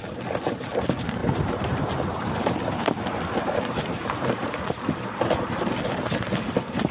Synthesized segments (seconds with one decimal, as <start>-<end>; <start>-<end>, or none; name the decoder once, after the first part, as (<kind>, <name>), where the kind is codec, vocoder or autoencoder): 1.2-5.3 (vocoder, BigVGAN v2)